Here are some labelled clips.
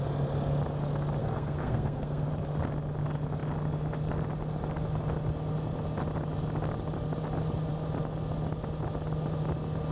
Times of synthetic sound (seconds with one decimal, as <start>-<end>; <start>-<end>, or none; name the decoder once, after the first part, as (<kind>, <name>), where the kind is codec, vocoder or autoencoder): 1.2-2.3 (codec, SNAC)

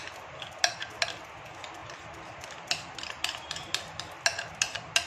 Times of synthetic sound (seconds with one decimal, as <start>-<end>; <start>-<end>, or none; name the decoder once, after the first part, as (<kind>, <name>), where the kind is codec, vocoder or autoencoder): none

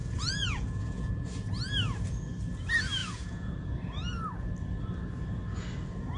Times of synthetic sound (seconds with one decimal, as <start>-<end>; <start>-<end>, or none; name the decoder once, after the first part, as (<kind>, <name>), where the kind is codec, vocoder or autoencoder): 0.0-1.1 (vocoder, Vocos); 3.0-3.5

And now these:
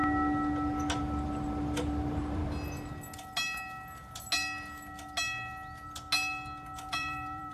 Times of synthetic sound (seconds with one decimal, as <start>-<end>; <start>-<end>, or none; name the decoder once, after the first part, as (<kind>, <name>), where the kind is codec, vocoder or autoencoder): 1.0-2.4 (vocoder, BigVGAN v2); 6.9-7.5

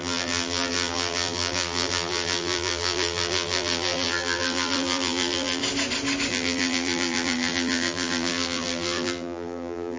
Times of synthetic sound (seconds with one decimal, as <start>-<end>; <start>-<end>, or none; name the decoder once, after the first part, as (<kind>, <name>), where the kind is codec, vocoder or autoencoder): 0.0-5.6 (vocoder, BigVGAN v2); 6.3-10.0

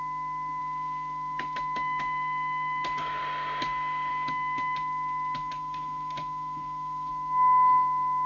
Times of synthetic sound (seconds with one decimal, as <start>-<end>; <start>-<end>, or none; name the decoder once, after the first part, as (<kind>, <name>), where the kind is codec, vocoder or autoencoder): 0.6-3.2 (autoencoder, DAC-VAE); 4.1-7.1

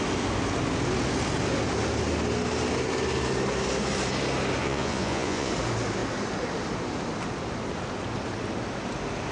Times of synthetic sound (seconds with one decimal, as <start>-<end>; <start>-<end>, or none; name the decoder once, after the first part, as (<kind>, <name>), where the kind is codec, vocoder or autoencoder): 4.6-5.5 (vocoder, Vocos)

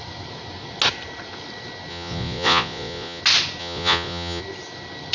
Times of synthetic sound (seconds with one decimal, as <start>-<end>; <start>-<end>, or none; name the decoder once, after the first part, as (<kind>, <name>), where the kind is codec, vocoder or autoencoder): 1.9-3.2 (vocoder, Vocos); 3.6-4.4